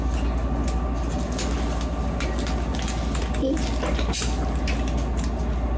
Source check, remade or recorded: recorded